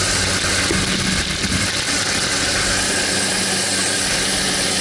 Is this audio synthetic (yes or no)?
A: no